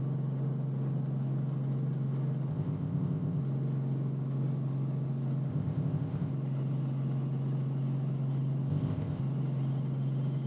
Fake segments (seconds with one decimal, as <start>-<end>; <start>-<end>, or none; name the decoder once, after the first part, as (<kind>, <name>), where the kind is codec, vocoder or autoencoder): 2.5-3.4 (codec, ZipCodec); 5.5-6.3; 8.7-9.2